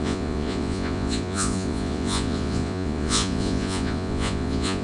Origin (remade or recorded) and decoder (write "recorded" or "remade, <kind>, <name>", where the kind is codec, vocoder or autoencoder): remade, vocoder, Vocos